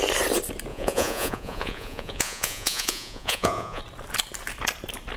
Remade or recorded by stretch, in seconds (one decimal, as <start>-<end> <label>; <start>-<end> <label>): 0.0-0.7 recorded; 0.7-3.8 remade; 3.8-5.2 recorded